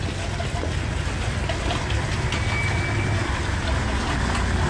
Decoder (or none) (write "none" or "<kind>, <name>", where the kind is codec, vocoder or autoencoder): none